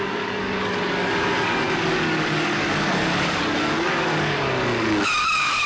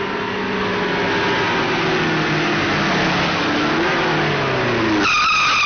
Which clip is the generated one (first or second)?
first